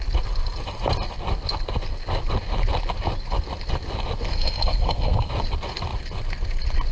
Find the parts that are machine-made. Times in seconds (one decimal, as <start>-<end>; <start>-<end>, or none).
4.3-5.3